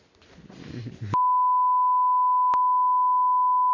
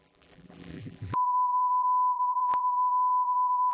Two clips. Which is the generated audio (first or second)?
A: second